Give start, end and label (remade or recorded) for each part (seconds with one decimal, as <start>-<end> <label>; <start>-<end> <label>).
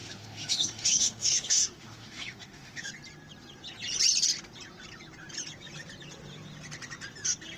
0.0-2.9 remade; 2.9-7.6 recorded